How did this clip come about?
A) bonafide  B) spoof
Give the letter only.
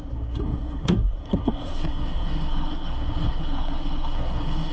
B